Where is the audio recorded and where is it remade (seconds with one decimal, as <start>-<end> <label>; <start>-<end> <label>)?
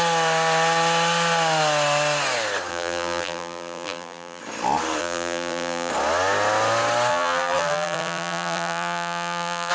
0.0-2.7 recorded; 2.7-4.4 remade; 4.4-5.0 recorded; 5.0-5.9 remade; 5.9-7.1 recorded; 7.1-9.7 remade